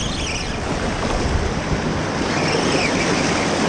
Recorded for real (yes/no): yes